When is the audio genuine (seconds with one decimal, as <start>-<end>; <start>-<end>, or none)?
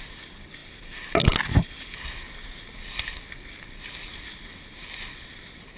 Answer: 0.0-5.8